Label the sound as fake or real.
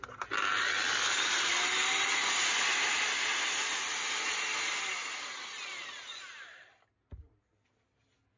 real